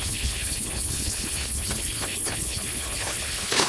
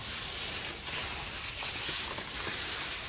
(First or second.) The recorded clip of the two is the second